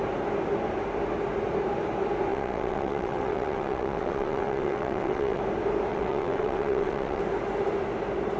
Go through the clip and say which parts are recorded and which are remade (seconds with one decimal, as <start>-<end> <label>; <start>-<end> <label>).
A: 0.0-2.3 recorded; 2.3-5.4 remade; 5.4-5.9 recorded; 5.9-7.2 remade; 7.2-8.4 recorded